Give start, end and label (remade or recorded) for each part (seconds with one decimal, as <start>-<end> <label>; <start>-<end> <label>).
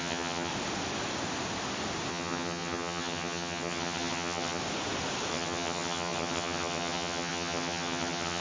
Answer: 0.0-0.5 remade; 0.5-2.1 recorded; 2.1-4.6 remade; 4.6-5.3 recorded; 5.3-8.4 remade